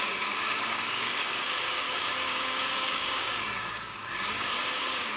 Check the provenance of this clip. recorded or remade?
remade